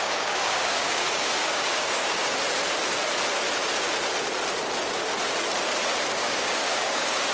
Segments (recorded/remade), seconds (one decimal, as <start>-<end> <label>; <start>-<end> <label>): 0.0-2.4 remade; 2.4-6.1 recorded; 6.1-7.3 remade